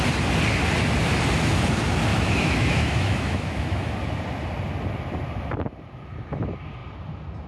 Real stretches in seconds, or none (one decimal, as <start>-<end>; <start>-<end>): 0.0-2.1; 3.9-7.5

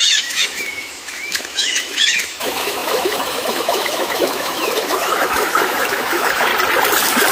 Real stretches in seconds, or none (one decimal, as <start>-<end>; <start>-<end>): 6.5-7.3

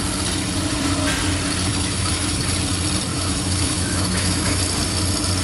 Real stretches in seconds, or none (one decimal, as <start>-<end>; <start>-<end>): 0.0-1.7; 2.4-3.1; 4.6-5.4

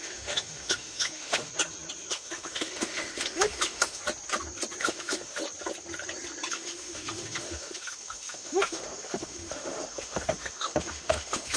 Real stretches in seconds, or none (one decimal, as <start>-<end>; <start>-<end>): 1.5-2.1; 4.0-4.8; 5.4-6.5

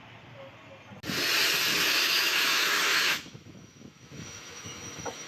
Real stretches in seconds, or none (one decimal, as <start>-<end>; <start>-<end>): 0.0-1.7

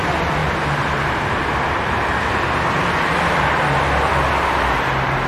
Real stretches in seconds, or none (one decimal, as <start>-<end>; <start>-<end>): 0.0-5.3

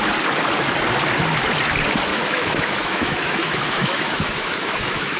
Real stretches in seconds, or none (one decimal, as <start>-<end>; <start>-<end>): 0.0-2.1

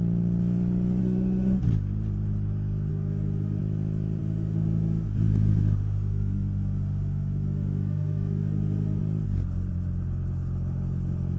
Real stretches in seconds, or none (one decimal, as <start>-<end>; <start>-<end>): 0.0-1.0; 1.6-2.9; 3.6-4.2; 9.0-11.4